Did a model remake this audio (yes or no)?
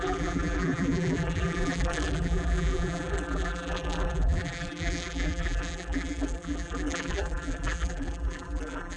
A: yes